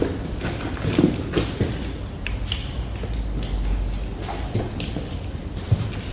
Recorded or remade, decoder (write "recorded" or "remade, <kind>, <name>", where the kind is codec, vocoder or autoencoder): recorded